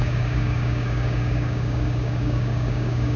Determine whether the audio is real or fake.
fake